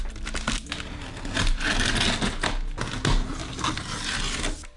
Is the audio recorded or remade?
recorded